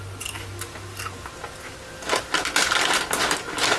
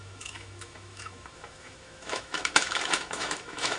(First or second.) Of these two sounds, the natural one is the first